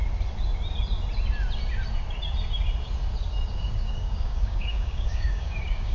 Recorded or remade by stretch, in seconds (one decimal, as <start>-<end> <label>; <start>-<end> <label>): 0.0-3.5 recorded; 3.5-5.9 remade